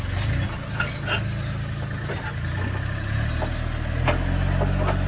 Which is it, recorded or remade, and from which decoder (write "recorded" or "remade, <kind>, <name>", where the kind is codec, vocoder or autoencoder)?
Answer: recorded